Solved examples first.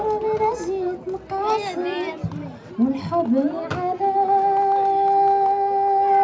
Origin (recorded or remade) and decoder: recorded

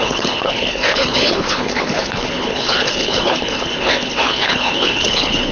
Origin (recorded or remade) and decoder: remade, codec, HILCodec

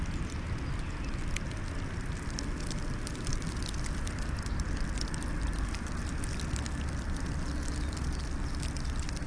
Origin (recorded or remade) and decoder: recorded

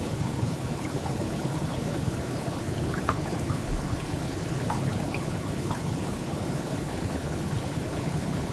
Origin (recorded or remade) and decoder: remade, codec, HILCodec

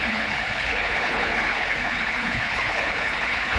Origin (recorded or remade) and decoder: remade, codec, HILCodec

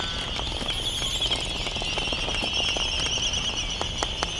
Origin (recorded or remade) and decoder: recorded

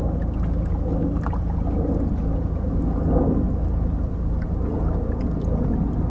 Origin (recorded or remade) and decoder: recorded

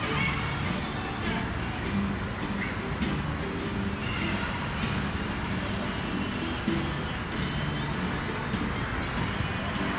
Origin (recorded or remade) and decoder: recorded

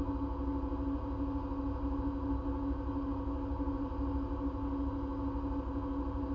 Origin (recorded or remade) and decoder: recorded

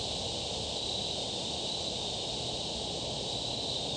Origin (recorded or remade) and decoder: recorded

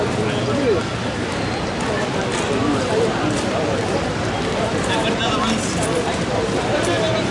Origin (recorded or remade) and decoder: recorded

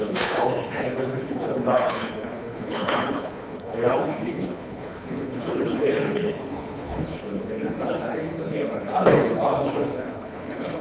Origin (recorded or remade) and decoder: remade, codec, HILCodec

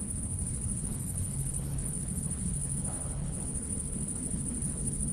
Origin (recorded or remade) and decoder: remade, codec, HILCodec